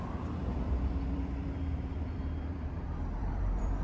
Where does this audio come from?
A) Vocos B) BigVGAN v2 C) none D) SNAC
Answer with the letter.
B